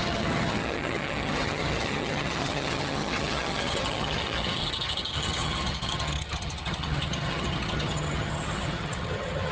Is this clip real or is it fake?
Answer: fake